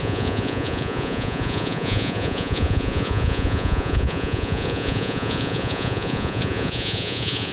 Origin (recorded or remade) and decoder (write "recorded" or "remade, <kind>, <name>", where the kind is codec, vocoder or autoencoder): remade, vocoder, Vocos